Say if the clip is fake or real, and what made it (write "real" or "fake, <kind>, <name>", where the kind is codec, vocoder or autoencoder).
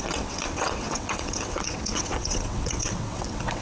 fake, vocoder, WaveNeXt